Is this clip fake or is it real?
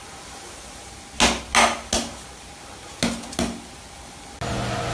real